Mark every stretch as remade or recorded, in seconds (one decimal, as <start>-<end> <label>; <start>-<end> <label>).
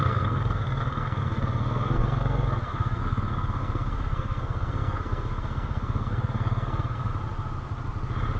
0.0-7.1 remade; 7.1-8.4 recorded